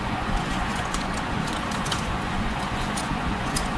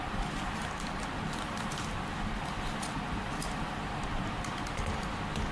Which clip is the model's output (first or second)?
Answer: first